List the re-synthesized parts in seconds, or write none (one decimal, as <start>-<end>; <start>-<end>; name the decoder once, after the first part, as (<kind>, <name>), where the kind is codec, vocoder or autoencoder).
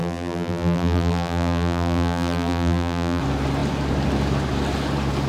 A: 0.0-3.2 (vocoder, BigVGAN v2)